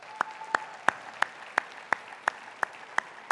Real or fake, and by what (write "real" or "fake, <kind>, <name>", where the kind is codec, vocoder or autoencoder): real